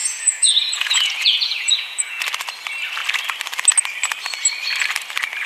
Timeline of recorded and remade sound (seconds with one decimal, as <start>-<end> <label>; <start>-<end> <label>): 0.0-2.2 remade; 2.2-5.5 recorded

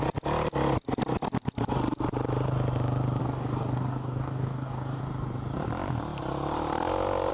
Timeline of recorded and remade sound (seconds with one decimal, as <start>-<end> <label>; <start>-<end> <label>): 0.0-3.2 recorded; 3.2-5.0 remade; 5.0-7.3 recorded

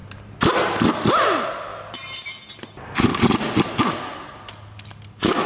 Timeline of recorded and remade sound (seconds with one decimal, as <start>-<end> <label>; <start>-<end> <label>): 0.0-0.7 remade; 0.7-1.7 recorded; 1.7-2.3 remade; 2.3-3.1 recorded; 3.1-3.8 remade; 3.8-5.5 recorded

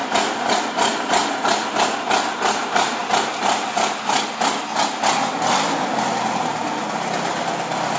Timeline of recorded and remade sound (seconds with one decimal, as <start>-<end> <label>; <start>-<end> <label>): 0.0-0.7 recorded; 0.7-1.2 remade; 1.2-2.5 recorded; 2.5-3.0 remade; 3.0-8.0 recorded

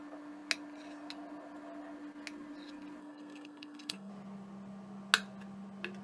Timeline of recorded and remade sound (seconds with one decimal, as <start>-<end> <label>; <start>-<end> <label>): 0.0-3.0 recorded; 3.0-4.1 remade; 4.1-6.0 recorded